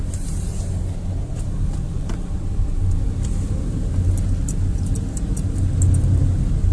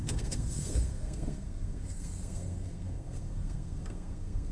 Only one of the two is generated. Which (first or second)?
second